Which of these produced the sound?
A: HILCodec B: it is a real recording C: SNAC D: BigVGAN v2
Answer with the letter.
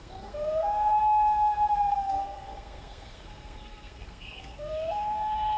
C